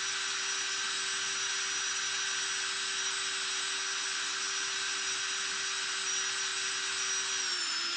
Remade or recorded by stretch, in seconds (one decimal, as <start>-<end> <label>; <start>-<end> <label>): 0.0-8.0 recorded